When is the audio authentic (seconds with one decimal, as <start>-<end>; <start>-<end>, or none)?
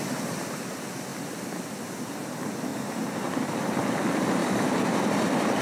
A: 0.0-2.7; 3.3-4.4